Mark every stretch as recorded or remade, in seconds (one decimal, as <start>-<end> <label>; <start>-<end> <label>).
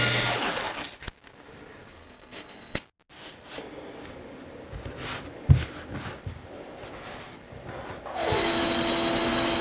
0.0-1.9 recorded; 1.9-2.8 remade; 2.8-9.6 recorded